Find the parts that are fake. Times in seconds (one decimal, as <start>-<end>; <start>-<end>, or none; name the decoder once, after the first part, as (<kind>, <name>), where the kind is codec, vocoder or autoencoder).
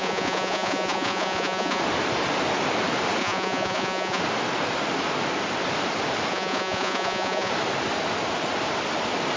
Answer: 0.0-1.8 (vocoder, Vocos); 3.2-4.2; 6.3-7.5